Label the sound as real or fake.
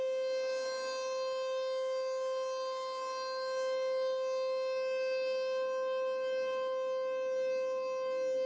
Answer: real